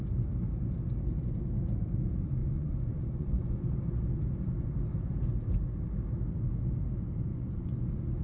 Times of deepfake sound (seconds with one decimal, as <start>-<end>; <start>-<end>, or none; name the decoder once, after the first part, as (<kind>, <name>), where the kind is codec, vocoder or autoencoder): 2.4-3.6 (vocoder, Vocos); 7.3-8.2